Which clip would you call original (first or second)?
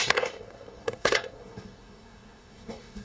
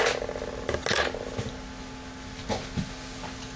second